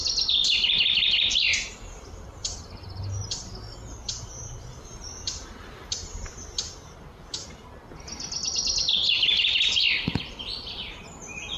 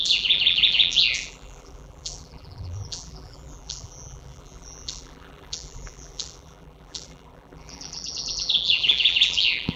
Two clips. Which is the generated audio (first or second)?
second